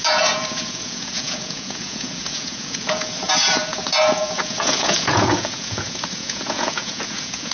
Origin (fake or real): fake